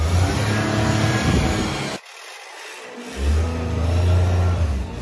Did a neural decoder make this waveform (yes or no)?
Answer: no